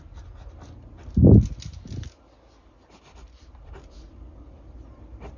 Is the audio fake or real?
real